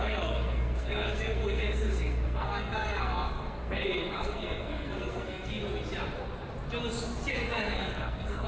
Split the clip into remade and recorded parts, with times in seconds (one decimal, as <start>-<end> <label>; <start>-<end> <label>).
0.0-5.6 remade; 5.6-7.3 recorded; 7.3-8.5 remade